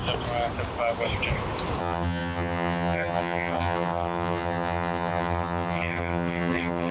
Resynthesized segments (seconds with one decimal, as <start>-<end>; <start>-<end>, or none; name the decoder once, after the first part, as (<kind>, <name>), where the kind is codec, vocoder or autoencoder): 1.8-6.9 (vocoder, HiFi-GAN)